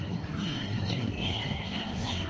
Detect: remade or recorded remade